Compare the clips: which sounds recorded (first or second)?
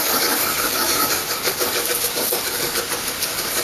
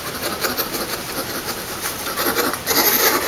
second